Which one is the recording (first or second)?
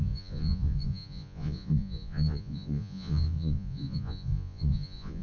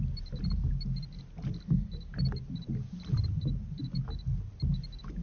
second